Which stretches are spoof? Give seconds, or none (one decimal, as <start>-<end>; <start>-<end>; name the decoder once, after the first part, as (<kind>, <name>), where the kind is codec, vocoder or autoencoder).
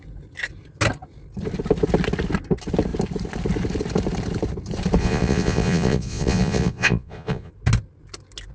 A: 5.0-7.5 (vocoder, Vocos)